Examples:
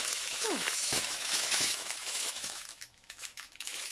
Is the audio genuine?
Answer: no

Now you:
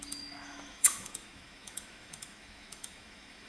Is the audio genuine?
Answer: no